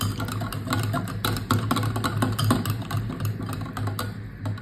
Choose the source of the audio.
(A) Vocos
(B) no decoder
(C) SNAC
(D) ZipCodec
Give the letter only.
B